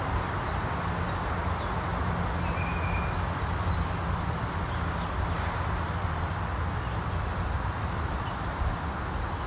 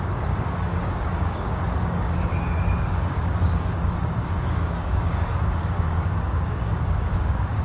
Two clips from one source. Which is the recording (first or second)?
first